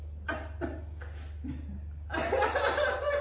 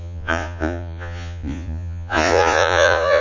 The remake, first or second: second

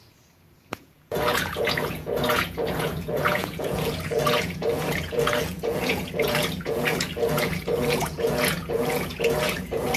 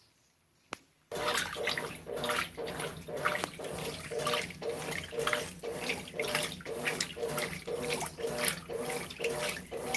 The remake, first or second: first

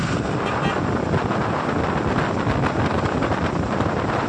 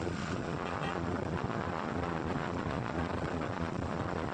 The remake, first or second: second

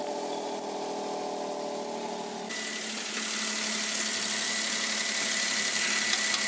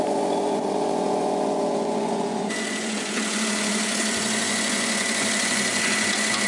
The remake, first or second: second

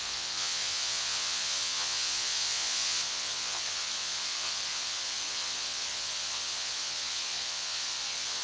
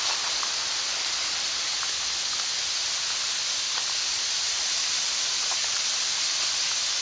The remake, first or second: first